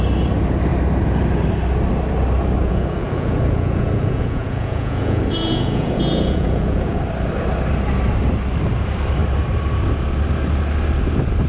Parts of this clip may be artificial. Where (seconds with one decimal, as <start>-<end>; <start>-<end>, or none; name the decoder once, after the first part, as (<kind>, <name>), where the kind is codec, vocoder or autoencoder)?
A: 2.6-7.0 (vocoder, Vocos)